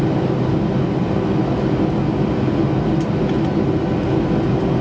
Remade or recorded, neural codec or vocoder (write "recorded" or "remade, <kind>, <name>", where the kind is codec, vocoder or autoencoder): recorded